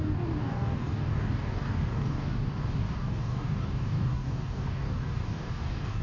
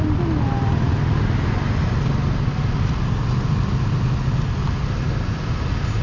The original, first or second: second